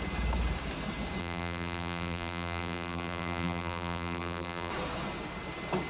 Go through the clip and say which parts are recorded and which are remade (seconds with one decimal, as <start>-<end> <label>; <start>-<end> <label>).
0.0-1.2 recorded; 1.2-4.7 remade; 4.7-5.9 recorded